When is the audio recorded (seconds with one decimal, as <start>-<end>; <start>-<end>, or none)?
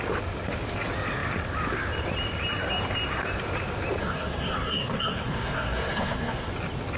0.0-4.0; 6.5-7.0